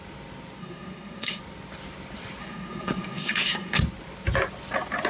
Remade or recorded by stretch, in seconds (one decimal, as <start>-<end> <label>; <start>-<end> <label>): 0.0-0.6 recorded; 0.6-1.4 remade; 1.4-2.4 recorded; 2.4-3.8 remade; 3.8-5.1 recorded